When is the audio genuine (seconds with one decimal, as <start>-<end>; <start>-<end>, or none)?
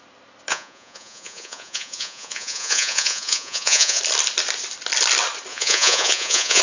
0.0-0.5; 4.0-5.5